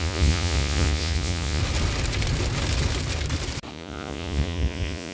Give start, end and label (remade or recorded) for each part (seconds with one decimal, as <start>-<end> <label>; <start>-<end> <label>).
0.0-1.6 remade; 1.6-3.7 recorded; 3.7-5.1 remade